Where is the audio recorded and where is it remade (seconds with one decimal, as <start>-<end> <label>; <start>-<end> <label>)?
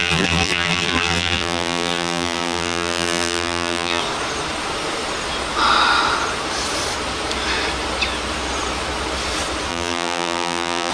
0.0-4.0 remade; 4.0-9.7 recorded; 9.7-10.9 remade